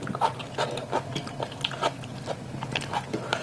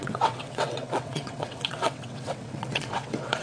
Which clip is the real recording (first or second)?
first